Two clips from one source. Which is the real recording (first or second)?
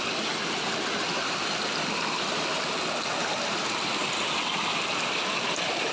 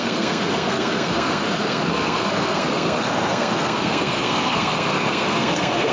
first